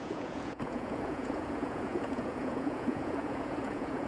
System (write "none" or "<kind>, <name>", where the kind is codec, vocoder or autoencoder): vocoder, Vocos